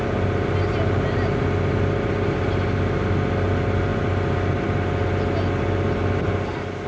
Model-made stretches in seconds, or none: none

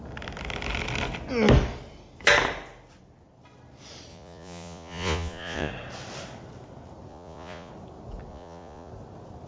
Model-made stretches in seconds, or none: 4.1-5.7 (vocoder, Vocos); 7.1-7.7; 8.3-8.9

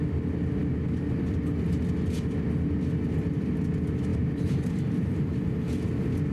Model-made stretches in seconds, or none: 4.1-5.3 (vocoder, BigVGAN v2)

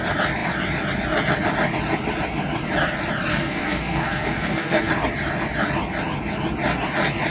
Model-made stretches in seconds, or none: 3.3-4.9 (codec, SNAC)

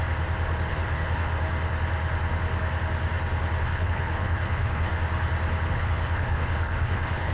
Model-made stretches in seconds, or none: 0.7-1.3 (codec, HILCodec); 3.6-4.9; 5.7-7.3

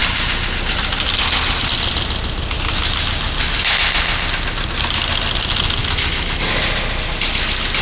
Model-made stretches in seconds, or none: none

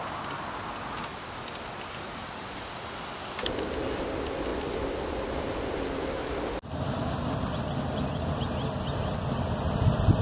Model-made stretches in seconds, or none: none

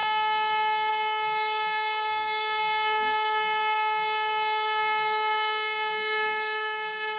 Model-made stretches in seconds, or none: 0.9-7.2 (codec, SNAC)